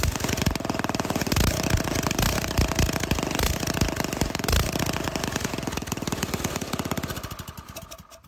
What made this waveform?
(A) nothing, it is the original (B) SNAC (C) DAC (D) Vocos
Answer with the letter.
A